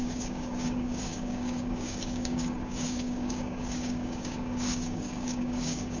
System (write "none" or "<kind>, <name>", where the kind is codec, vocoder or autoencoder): codec, DAC